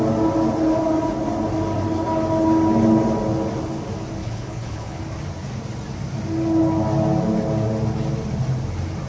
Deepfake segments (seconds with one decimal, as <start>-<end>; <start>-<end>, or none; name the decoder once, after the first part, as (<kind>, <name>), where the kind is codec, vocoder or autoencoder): 4.2-5.0 (codec, HILCodec)